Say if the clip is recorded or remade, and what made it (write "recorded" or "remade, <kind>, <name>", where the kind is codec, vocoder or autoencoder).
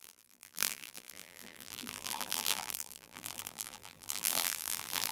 remade, vocoder, BigVGAN v2